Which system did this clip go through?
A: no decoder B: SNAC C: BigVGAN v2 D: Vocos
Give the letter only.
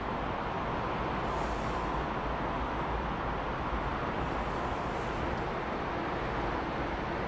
A